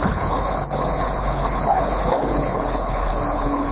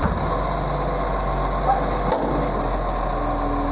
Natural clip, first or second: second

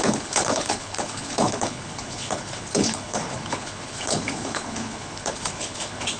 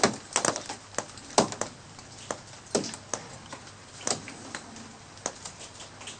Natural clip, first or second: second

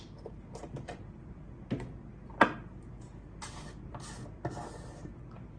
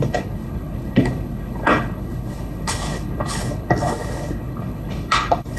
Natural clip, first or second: first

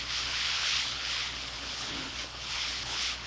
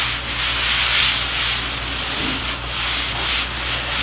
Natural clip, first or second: second